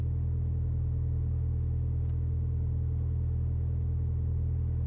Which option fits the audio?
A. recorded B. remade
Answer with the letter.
A